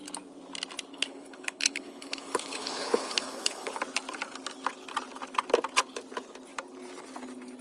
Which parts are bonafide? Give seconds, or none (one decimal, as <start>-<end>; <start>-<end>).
0.0-0.9; 3.8-7.6